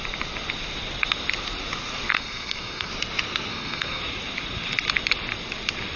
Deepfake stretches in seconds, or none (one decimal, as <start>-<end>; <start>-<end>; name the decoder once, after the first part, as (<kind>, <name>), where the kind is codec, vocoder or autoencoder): 2.1-2.9 (codec, SNAC); 3.5-4.0